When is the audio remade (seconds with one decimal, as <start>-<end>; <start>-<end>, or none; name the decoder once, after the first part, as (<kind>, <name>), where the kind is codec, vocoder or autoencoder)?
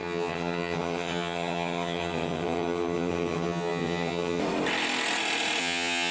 0.0-4.4 (vocoder, HiFi-GAN); 5.6-6.1